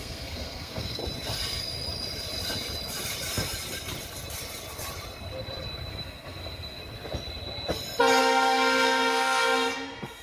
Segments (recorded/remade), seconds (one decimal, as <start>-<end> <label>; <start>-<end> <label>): 0.0-1.0 remade; 1.0-5.9 recorded; 5.9-6.8 remade; 6.8-8.2 recorded; 8.2-10.2 remade